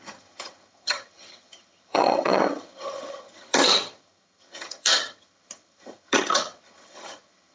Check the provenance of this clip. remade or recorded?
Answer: remade